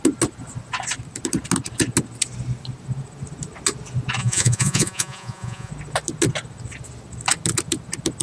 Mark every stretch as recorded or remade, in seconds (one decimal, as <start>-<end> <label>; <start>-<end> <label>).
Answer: 0.0-4.2 recorded; 4.2-5.7 remade; 5.7-8.2 recorded